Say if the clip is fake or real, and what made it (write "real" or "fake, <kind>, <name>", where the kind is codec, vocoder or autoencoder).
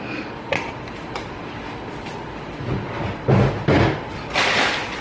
real